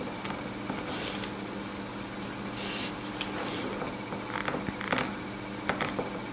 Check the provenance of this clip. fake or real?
real